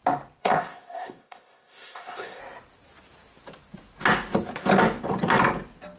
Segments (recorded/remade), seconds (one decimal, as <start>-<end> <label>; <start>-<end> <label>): 0.0-0.4 recorded; 0.4-2.4 remade; 2.4-6.0 recorded